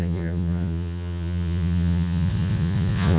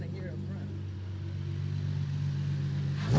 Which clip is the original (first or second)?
second